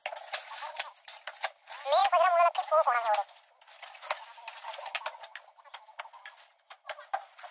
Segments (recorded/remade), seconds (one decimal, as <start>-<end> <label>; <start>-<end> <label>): 0.0-7.5 recorded